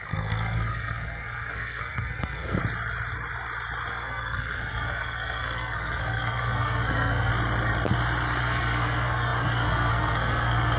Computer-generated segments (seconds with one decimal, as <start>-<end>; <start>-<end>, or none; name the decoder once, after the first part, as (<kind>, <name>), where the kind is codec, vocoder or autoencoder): 0.0-2.6 (codec, SNAC); 3.9-7.3; 8.4-10.8